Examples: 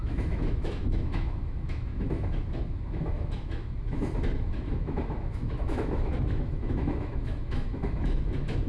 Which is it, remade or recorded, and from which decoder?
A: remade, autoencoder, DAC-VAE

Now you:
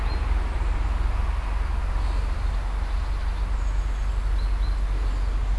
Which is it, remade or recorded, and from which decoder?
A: recorded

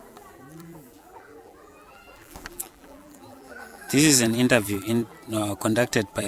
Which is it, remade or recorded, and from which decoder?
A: remade, vocoder, BigVGAN v2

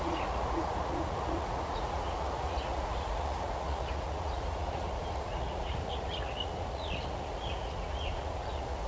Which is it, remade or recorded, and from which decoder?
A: remade, vocoder, Vocos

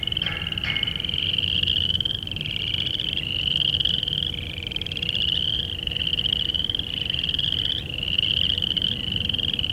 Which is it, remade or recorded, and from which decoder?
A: remade, vocoder, BigVGAN v2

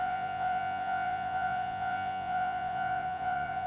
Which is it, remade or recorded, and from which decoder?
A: remade, vocoder, Vocos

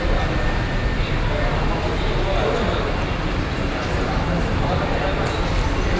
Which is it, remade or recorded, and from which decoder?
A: recorded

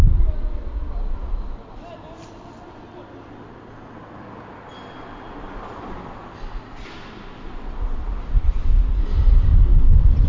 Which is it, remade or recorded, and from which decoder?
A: recorded